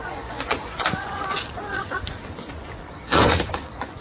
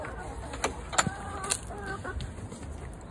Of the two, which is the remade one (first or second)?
first